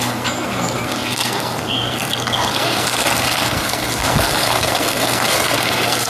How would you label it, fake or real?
fake